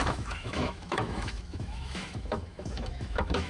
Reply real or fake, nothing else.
fake